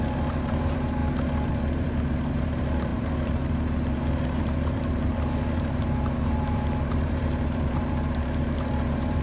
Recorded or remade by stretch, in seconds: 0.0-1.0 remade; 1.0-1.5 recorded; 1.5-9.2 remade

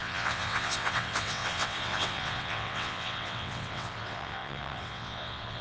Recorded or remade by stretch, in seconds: 0.0-5.6 remade